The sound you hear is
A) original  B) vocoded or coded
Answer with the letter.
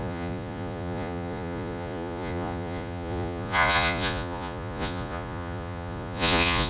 B